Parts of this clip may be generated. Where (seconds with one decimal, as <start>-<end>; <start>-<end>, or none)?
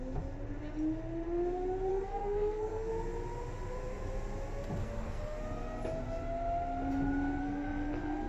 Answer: 1.9-2.9; 4.8-5.4; 7.4-8.3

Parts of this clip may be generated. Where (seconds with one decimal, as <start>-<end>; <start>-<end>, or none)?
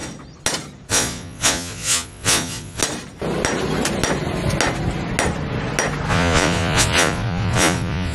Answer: 0.9-2.8; 6.1-8.1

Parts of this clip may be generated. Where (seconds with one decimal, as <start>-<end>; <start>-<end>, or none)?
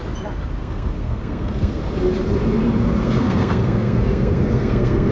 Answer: 0.6-1.8; 3.0-5.1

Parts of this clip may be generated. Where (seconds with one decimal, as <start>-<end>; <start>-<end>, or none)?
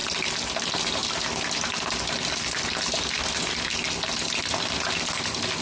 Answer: none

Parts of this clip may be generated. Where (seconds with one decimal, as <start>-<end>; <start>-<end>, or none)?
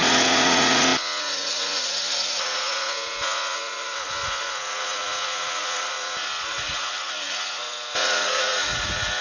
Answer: 0.0-9.2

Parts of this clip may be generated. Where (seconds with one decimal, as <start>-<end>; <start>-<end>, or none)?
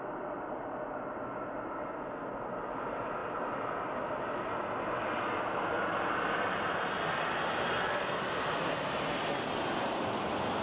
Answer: none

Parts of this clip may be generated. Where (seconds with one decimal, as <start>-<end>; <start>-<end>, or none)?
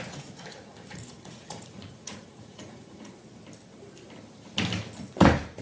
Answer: 0.7-3.1